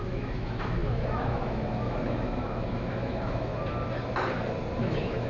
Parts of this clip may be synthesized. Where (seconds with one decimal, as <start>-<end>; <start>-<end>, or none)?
0.0-3.5; 4.8-5.3